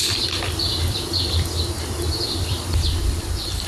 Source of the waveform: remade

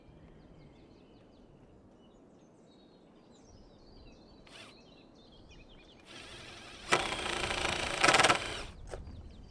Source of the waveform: recorded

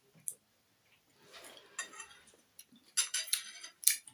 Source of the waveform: recorded